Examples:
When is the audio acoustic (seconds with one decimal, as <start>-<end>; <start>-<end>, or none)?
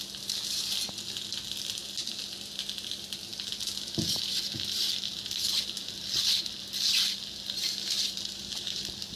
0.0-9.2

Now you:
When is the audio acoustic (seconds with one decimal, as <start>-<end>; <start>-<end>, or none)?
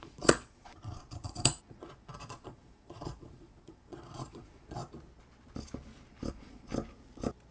4.8-6.3; 6.7-7.5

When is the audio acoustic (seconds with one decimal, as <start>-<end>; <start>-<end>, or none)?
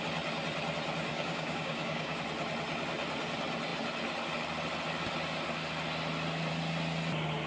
0.0-1.1; 2.2-7.5